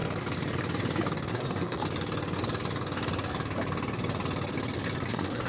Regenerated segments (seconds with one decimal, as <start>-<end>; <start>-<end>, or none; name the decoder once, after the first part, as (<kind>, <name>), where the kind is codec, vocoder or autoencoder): 1.3-1.8 (codec, SNAC); 5.1-5.5